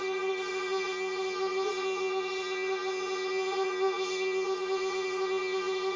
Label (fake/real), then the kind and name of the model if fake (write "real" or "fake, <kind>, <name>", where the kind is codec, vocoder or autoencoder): fake, vocoder, Vocos